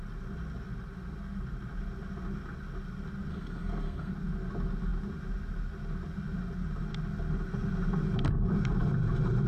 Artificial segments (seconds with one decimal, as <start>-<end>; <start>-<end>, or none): 3.3-4.1